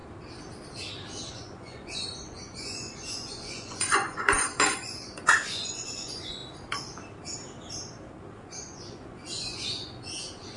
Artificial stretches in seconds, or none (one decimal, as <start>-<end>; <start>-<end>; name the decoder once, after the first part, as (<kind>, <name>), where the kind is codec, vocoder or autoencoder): 1.3-6.4 (vocoder, Vocos); 8.3-10.6